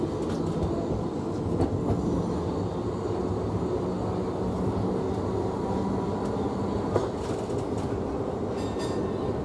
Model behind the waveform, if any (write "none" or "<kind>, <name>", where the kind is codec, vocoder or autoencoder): none